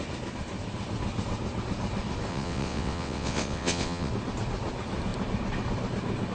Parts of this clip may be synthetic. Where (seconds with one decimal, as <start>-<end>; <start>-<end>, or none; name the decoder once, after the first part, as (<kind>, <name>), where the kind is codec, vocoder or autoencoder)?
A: 2.3-4.1 (vocoder, WaveNeXt)